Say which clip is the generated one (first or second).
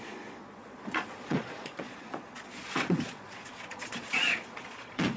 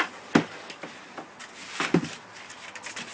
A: first